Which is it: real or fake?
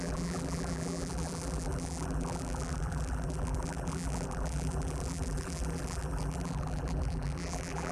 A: fake